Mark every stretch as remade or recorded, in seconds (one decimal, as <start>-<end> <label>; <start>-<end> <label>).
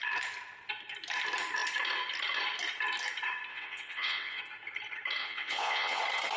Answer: 0.0-3.5 recorded; 3.5-4.4 remade; 4.4-5.2 recorded; 5.2-6.0 remade; 6.0-6.4 recorded